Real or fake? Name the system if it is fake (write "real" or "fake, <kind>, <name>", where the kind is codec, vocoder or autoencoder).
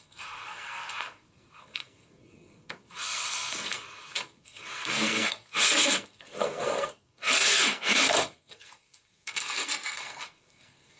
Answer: fake, codec, SNAC